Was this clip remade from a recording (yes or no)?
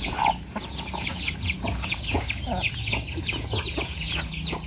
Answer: yes